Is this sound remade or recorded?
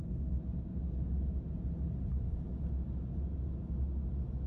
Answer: recorded